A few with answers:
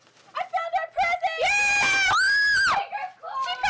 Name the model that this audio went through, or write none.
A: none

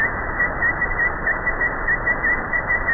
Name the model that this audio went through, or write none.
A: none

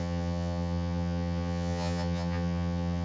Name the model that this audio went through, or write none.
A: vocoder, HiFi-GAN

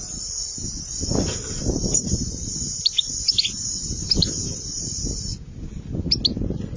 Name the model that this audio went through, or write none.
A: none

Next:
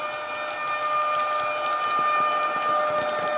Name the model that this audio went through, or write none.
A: none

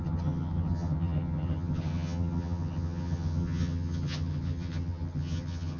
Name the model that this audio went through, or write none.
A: vocoder, HiFi-GAN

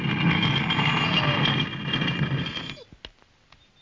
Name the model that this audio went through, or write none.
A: none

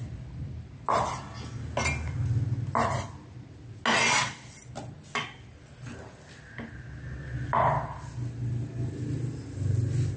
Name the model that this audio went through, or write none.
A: none